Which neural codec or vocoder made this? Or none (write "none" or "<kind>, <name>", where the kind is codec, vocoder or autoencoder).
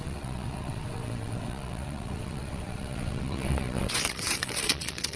vocoder, WaveNeXt